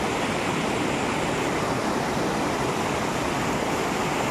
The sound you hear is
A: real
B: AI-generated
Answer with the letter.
A